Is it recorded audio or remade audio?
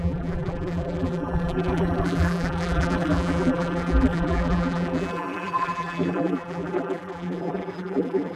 remade